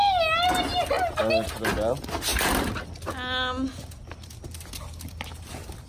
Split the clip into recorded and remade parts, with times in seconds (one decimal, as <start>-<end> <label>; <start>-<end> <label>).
0.0-5.9 recorded